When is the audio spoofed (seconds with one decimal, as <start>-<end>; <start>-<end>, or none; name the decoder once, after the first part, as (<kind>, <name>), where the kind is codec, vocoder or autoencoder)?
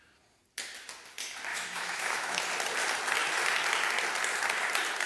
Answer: 1.5-2.4 (autoencoder, DAC-VAE)